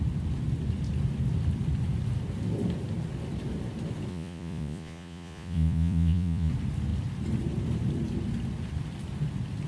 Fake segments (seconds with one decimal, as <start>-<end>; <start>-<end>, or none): 4.1-6.5